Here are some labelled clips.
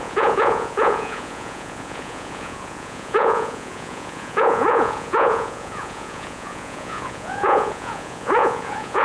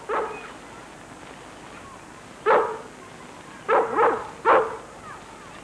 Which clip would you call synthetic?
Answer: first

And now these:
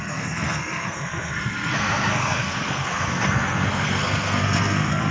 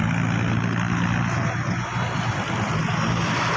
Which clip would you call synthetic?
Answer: first